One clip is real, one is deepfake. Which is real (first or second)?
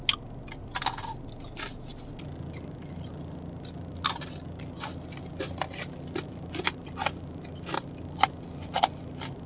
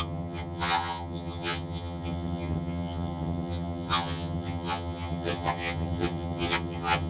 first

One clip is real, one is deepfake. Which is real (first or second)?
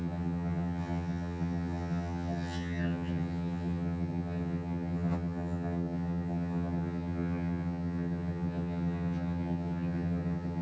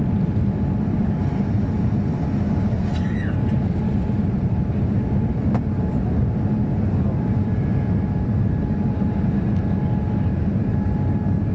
second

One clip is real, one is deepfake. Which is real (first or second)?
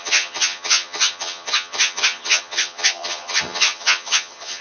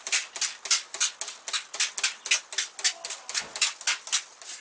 second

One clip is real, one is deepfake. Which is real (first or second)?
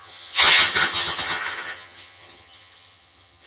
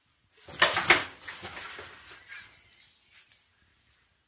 second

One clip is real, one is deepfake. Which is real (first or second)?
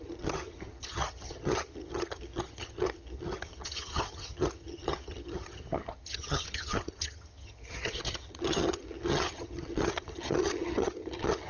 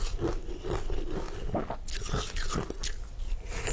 second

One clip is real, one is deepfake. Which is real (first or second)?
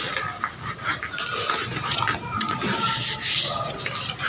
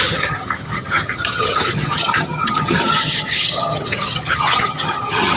first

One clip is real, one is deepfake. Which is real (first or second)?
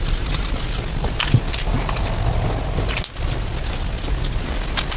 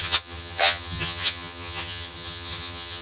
first